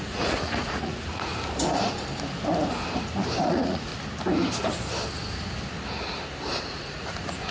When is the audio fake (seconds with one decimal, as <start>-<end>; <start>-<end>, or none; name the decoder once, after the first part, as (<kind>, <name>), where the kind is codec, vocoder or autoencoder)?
0.0-1.3 (vocoder, Vocos); 3.4-3.9; 6.6-7.5